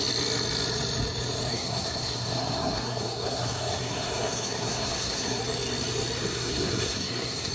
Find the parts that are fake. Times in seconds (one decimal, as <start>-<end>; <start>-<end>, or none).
1.5-5.4; 6.3-7.5